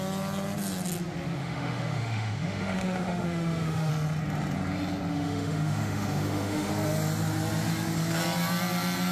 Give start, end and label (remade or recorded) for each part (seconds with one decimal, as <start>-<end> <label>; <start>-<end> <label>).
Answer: 0.0-1.4 recorded; 1.4-3.9 remade; 3.9-5.1 recorded; 5.1-6.7 remade; 6.7-9.1 recorded